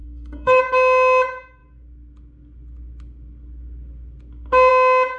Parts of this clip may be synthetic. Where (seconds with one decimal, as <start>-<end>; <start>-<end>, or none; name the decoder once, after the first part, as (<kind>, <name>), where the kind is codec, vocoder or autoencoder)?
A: 0.0-0.6 (codec, SNAC)